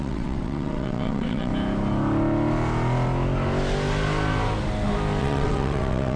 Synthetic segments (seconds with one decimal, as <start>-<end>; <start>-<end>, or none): 0.0-1.5; 5.2-6.2